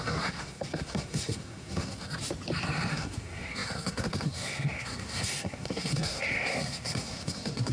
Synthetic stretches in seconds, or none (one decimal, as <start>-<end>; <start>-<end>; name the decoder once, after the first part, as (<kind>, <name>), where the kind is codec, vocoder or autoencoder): 0.0-2.1 (codec, SNAC); 2.9-7.7